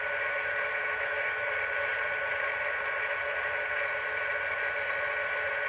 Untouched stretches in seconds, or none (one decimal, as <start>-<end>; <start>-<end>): 0.0-0.7; 1.5-5.7